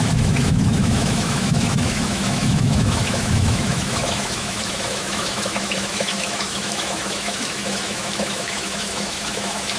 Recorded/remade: remade